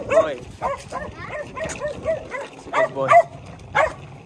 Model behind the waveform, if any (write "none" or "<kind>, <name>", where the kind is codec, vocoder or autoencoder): none